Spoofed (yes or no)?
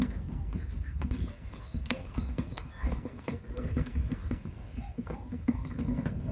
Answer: yes